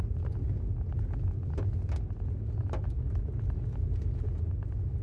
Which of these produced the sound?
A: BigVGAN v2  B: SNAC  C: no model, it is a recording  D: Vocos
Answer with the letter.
C